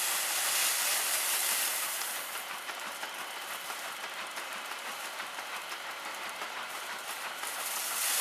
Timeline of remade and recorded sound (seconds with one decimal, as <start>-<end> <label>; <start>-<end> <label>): 0.0-1.7 recorded; 1.7-5.4 remade; 5.4-6.1 recorded; 6.1-8.2 remade